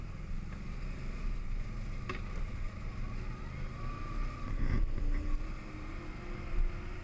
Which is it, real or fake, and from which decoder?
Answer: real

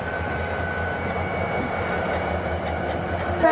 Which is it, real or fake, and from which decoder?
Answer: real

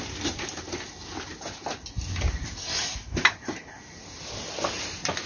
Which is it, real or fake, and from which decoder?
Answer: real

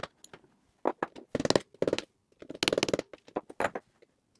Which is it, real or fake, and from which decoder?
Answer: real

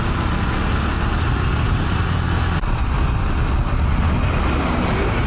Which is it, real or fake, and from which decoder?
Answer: real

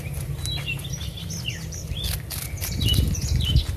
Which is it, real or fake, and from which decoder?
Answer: real